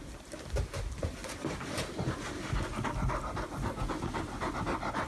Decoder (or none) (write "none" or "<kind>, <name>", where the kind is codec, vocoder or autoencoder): none